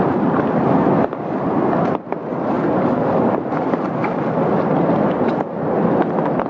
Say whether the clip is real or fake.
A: real